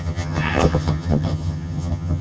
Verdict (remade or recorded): remade